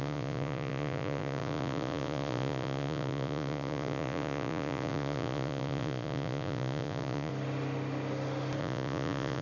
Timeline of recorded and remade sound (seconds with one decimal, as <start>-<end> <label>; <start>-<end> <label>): 0.0-7.3 remade; 7.3-8.6 recorded; 8.6-9.4 remade